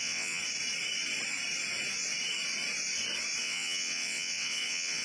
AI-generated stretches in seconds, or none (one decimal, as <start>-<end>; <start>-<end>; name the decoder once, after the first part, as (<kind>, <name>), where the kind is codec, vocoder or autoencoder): 0.0-0.4 (vocoder, WaveNeXt); 3.4-5.0